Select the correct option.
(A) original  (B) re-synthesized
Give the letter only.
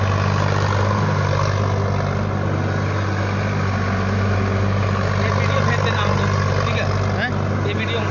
A